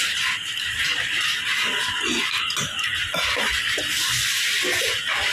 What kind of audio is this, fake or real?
real